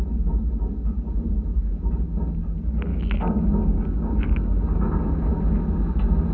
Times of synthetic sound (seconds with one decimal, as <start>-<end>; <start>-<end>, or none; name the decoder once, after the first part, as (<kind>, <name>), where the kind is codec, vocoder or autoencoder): 2.9-4.9 (codec, DAC)